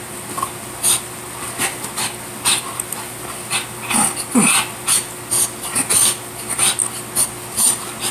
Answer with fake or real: real